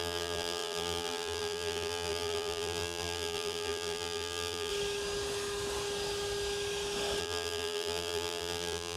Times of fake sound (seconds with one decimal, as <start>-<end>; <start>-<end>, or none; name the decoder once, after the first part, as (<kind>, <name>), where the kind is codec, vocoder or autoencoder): 0.0-4.7 (vocoder, BigVGAN v2); 7.2-9.0